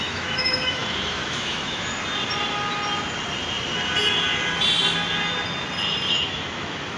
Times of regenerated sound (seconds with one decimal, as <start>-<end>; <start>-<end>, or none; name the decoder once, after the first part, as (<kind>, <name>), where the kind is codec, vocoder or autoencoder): 0.0-1.9 (autoencoder, DAC-VAE); 6.1-7.0